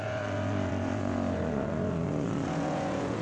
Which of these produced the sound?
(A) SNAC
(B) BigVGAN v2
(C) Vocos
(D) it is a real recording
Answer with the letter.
C